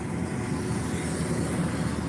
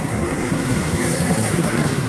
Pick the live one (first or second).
first